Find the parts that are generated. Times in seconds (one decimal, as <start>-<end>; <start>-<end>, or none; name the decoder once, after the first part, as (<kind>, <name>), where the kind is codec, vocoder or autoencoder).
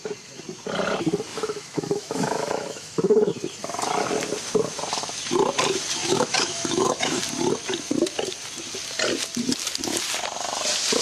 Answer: 1.3-3.3 (autoencoder, DAC-VAE); 6.0-7.2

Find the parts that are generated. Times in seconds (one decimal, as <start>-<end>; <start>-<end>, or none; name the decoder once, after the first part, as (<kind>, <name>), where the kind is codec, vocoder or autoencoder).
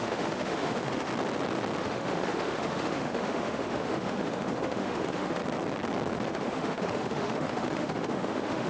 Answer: 0.0-1.1 (autoencoder, DAC-VAE); 1.8-5.4; 6.3-8.7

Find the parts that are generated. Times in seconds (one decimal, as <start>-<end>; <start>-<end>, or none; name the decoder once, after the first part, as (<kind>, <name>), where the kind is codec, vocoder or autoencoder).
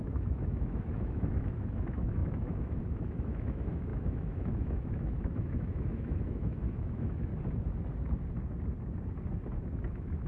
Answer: 0.0-7.3 (autoencoder, DAC-VAE); 9.9-10.3